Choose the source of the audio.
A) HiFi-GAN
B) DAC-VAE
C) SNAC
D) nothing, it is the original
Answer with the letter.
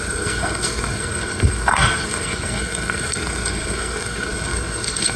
C